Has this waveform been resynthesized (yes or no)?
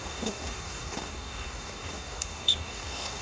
yes